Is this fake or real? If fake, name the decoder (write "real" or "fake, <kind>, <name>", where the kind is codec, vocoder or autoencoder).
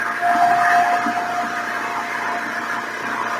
real